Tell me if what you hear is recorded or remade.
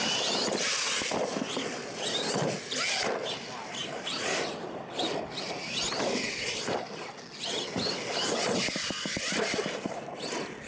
recorded